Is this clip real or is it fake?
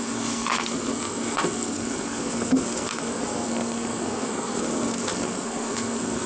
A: fake